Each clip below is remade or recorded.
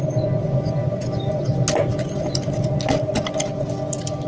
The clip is recorded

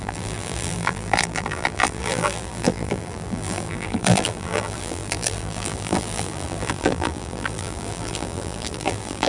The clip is remade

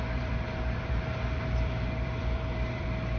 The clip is remade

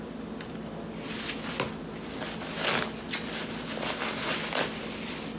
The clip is recorded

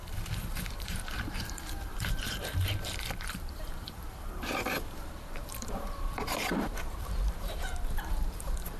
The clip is remade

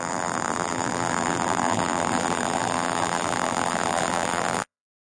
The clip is remade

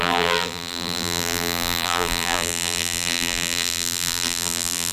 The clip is remade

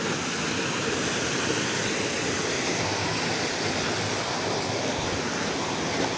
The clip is recorded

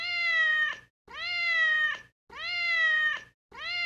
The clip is recorded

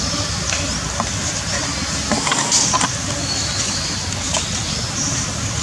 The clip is recorded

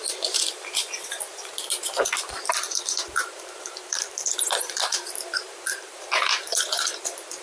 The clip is remade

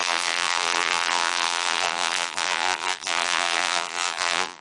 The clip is remade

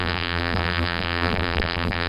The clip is remade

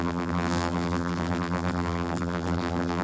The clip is remade